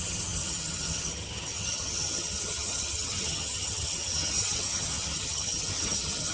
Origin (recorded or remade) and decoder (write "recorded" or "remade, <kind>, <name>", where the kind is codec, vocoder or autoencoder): remade, vocoder, HiFi-GAN